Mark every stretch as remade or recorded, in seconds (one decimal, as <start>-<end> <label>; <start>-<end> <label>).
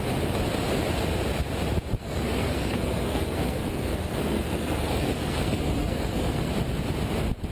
0.0-2.0 recorded; 2.0-6.5 remade; 6.5-7.5 recorded